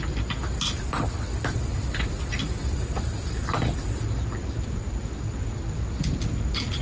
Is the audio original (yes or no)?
yes